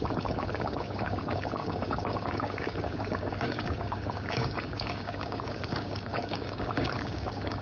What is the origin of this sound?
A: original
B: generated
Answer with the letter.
B